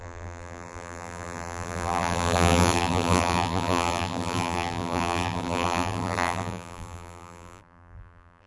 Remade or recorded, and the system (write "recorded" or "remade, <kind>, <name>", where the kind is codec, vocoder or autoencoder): remade, vocoder, BigVGAN v2